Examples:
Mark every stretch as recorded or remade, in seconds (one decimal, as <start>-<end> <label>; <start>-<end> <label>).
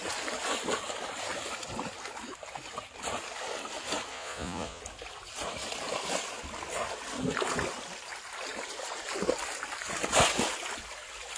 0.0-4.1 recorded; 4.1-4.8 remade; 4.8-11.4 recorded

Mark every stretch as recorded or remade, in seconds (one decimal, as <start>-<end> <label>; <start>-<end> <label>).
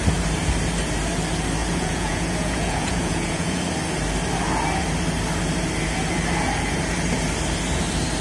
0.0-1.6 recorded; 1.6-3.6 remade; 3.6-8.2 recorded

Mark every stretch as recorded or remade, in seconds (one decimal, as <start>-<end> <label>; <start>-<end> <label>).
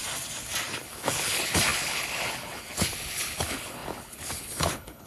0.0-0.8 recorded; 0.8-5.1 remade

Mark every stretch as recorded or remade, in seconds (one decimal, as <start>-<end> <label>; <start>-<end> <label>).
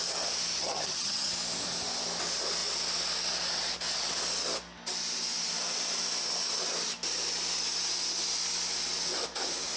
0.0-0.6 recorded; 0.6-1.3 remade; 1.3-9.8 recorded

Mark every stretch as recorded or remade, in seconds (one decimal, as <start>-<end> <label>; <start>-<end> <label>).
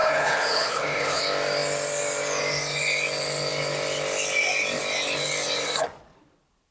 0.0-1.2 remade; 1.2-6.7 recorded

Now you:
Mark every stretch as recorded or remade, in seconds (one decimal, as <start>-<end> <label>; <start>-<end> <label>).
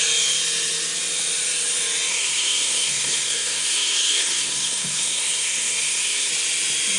0.0-2.1 recorded; 2.1-6.3 remade; 6.3-7.0 recorded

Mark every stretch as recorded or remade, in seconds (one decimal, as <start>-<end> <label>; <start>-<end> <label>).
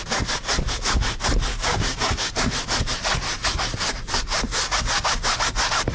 0.0-1.5 recorded; 1.5-2.4 remade; 2.4-5.9 recorded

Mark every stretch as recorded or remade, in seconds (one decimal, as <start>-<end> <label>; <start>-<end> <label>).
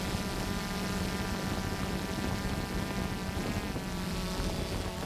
0.0-5.1 recorded